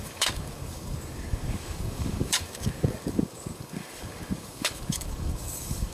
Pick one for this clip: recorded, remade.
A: remade